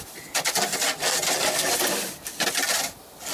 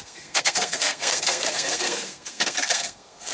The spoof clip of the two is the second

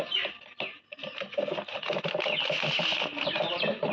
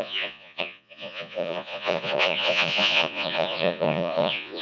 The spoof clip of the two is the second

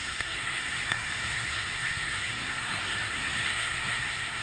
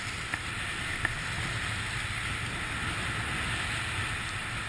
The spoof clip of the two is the first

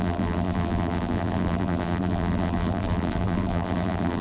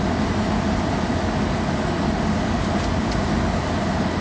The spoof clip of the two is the first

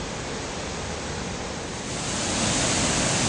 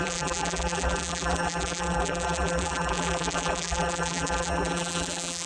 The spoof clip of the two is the second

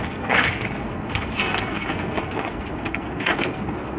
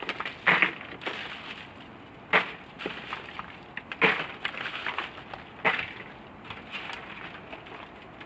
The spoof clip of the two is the first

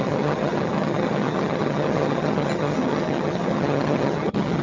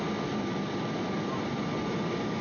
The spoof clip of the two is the first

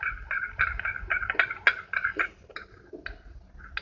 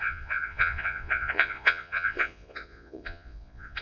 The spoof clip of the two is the second